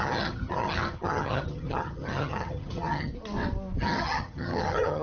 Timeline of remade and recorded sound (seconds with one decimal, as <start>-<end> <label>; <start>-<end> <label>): 0.0-3.1 remade; 3.1-3.8 recorded; 3.8-5.0 remade